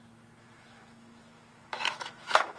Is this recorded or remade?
remade